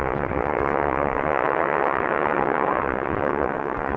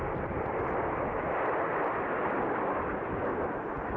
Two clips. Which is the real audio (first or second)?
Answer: second